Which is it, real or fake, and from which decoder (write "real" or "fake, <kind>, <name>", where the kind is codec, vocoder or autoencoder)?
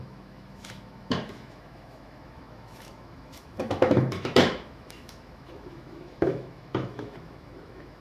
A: fake, autoencoder, DAC-VAE